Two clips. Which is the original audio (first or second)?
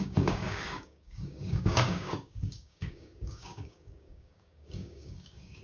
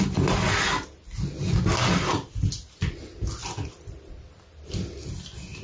second